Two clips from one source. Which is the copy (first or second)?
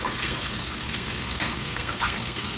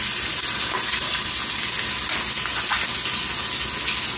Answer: first